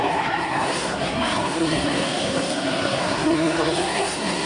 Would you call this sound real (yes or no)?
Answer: no